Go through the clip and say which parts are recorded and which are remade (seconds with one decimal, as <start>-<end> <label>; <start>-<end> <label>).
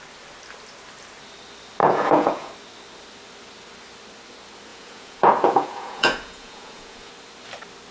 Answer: 0.0-1.8 recorded; 1.8-2.5 remade; 2.5-4.7 recorded; 4.7-7.1 remade; 7.1-7.9 recorded